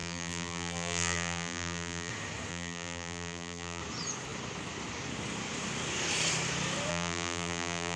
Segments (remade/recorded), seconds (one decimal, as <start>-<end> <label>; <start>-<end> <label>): 0.0-2.1 remade; 2.1-2.5 recorded; 2.5-3.8 remade; 3.8-6.9 recorded; 6.9-8.0 remade